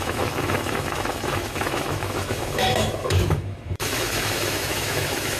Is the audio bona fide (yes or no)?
no